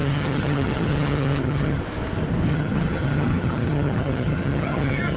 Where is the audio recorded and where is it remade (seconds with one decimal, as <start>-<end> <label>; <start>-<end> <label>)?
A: 0.0-1.8 remade; 1.8-2.5 recorded; 2.5-5.2 remade